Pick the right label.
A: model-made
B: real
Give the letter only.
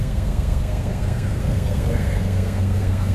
A